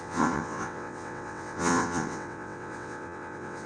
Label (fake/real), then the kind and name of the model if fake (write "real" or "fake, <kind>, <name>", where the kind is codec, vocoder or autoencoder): fake, vocoder, WaveNeXt